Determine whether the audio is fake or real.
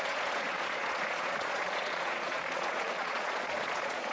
fake